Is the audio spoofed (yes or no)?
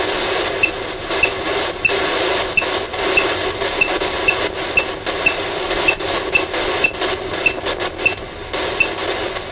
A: no